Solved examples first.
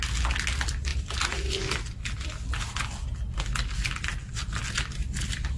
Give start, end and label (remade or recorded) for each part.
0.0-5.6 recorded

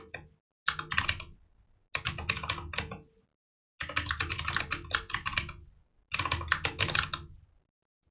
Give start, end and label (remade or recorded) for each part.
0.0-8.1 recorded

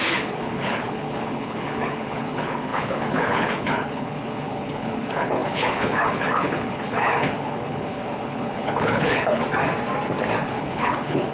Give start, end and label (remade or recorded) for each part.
0.0-9.4 remade; 9.4-10.4 recorded; 10.4-11.3 remade